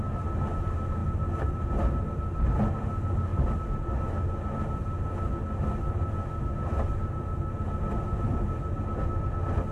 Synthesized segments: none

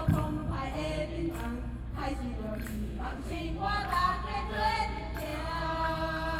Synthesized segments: 2.7-3.4 (autoencoder, DAC-VAE)

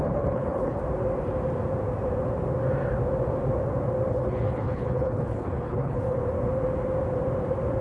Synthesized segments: 0.0-0.8 (codec, HILCodec); 4.1-6.2

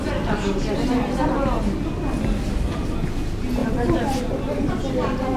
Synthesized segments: 3.6-4.7 (vocoder, BigVGAN v2)

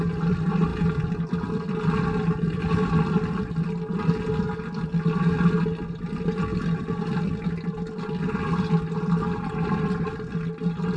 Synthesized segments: none

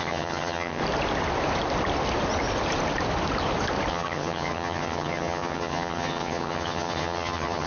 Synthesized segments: 0.0-0.8 (vocoder, HiFi-GAN); 3.9-7.7

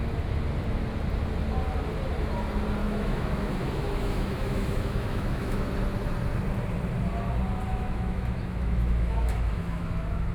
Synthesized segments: 2.8-5.7 (autoencoder, DAC-VAE); 7.7-10.3

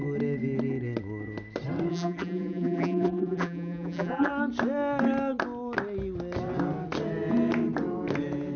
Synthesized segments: 1.9-4.3 (vocoder, BigVGAN v2)